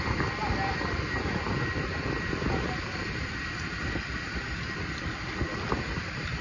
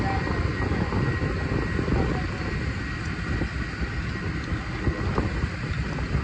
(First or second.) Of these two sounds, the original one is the second